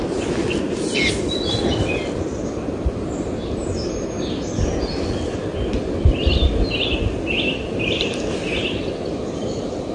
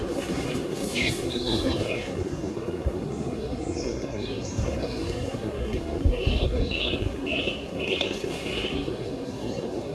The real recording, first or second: first